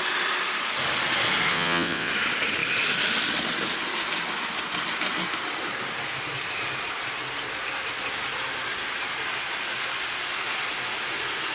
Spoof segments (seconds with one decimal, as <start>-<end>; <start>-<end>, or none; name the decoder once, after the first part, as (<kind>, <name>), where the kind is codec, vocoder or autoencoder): 1.5-2.1 (vocoder, WaveNeXt)